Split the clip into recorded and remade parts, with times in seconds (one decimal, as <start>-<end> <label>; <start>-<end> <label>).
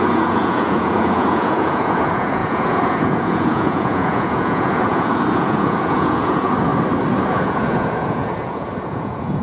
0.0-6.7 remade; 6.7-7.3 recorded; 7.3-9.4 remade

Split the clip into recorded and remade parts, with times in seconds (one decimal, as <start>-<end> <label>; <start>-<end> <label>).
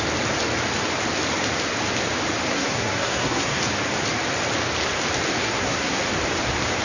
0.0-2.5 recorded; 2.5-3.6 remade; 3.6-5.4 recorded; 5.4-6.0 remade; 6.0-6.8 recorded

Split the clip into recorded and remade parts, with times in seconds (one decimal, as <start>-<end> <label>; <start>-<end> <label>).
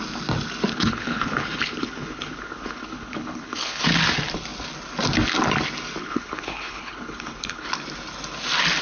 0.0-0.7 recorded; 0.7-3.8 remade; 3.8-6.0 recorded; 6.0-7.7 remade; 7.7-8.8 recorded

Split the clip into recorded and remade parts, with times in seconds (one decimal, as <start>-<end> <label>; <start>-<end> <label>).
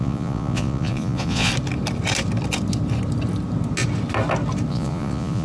0.0-1.5 remade; 1.5-4.7 recorded; 4.7-5.4 remade